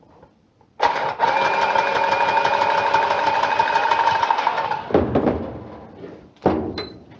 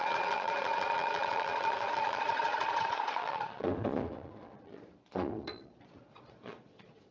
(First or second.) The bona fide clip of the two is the first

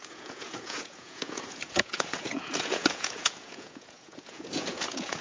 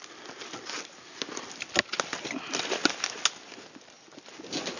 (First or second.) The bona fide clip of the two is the second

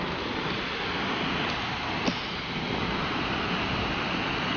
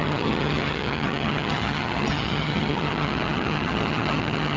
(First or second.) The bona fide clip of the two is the first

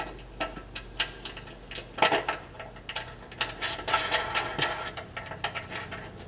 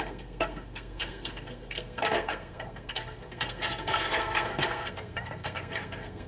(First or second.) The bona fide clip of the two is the first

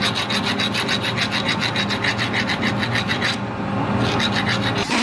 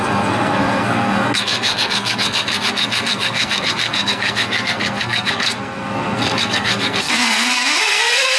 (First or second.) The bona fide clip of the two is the first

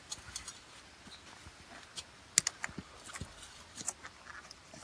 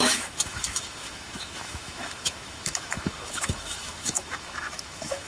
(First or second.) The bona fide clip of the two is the first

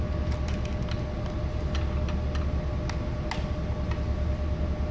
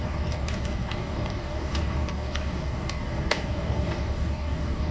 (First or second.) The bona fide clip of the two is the first